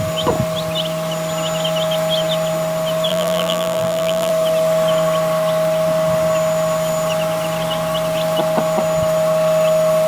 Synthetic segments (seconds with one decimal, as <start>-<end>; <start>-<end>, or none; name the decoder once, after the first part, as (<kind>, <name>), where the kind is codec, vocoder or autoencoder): 3.1-4.3 (vocoder, BigVGAN v2)